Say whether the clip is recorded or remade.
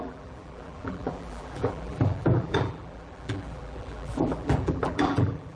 remade